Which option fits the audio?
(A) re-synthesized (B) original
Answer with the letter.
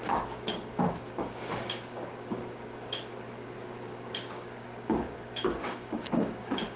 A